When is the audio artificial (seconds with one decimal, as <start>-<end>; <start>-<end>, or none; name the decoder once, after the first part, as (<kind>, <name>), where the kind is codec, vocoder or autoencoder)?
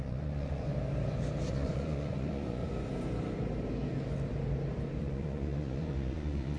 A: 0.0-0.7 (vocoder, Vocos); 1.5-2.6; 5.0-6.6